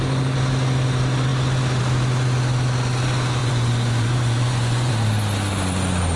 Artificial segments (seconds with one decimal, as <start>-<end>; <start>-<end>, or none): 3.4-4.9